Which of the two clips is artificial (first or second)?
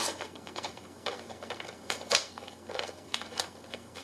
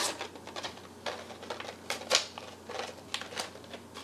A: first